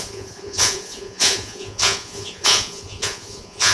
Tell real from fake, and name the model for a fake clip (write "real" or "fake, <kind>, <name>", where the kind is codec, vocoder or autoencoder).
fake, vocoder, Vocos